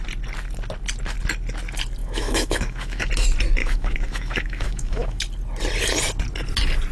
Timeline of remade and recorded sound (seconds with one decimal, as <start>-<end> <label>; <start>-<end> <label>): 0.0-2.0 recorded; 2.0-3.1 remade; 3.1-3.6 recorded; 3.6-5.2 remade; 5.2-6.9 recorded